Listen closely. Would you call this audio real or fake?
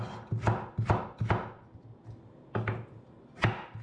real